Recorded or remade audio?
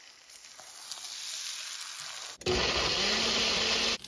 recorded